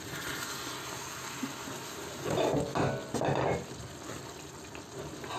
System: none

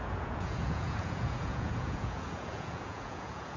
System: vocoder, Vocos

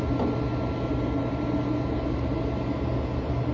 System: none